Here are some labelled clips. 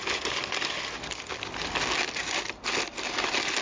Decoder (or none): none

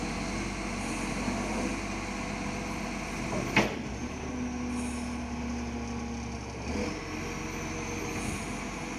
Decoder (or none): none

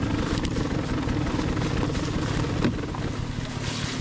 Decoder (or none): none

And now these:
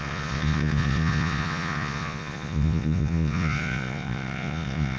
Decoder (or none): vocoder, Vocos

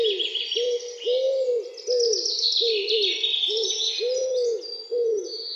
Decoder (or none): none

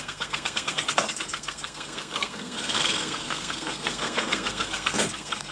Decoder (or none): codec, SNAC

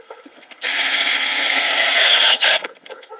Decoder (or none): codec, SNAC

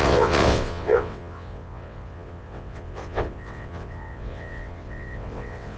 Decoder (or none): vocoder, WaveNeXt